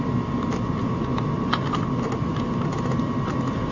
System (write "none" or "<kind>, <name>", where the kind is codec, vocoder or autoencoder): none